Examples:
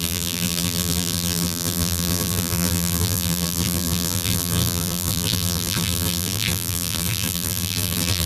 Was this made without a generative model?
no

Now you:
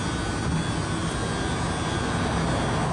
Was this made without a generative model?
yes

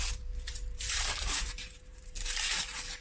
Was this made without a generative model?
no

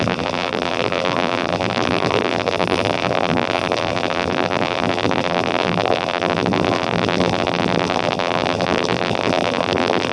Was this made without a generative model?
no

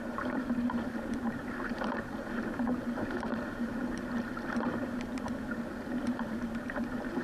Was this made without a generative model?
no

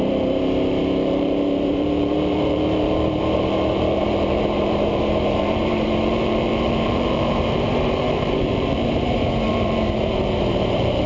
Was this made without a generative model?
no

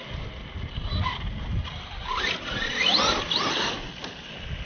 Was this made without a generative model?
yes